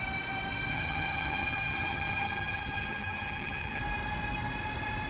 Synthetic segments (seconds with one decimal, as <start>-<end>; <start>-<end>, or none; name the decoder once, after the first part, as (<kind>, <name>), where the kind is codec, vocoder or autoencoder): 0.7-3.8 (vocoder, HiFi-GAN)